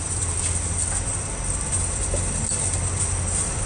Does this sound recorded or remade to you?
recorded